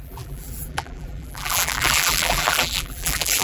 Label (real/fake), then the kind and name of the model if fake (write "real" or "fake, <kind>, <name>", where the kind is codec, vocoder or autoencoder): fake, vocoder, BigVGAN v2